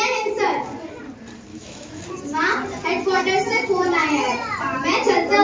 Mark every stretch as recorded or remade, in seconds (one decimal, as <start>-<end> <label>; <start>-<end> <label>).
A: 0.0-1.5 recorded; 1.5-2.0 remade; 2.0-5.4 recorded